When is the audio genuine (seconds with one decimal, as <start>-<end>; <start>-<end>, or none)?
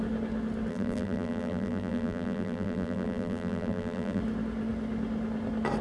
0.0-0.7; 4.2-5.8